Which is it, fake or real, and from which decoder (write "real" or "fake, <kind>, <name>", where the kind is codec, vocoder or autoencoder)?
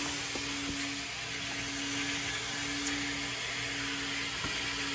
real